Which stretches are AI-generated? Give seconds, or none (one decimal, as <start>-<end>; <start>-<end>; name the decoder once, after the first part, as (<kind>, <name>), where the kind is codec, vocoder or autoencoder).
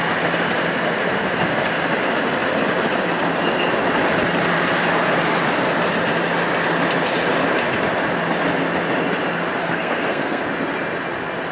9.6-10.4 (codec, SNAC)